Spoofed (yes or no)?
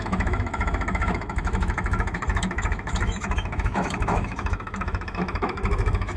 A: yes